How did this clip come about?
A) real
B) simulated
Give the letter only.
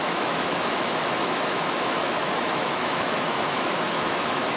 B